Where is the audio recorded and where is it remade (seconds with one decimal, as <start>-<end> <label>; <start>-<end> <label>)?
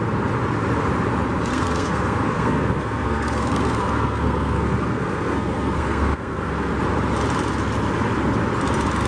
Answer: 0.0-1.5 recorded; 1.5-6.7 remade; 6.7-9.1 recorded